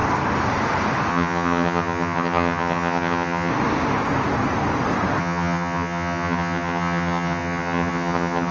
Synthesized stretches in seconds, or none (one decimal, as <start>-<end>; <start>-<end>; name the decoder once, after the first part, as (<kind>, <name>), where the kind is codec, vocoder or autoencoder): 1.1-3.5 (vocoder, HiFi-GAN); 5.2-8.5